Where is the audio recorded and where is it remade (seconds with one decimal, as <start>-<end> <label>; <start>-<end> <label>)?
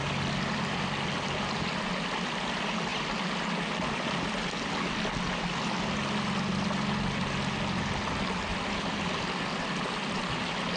0.0-10.8 recorded